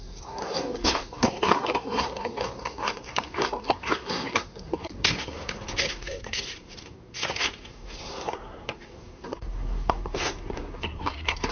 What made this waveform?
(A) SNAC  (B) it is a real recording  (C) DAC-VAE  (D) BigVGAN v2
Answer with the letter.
A